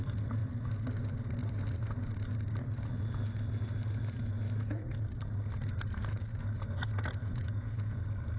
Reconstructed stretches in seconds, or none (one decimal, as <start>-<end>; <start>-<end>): 7.2-8.0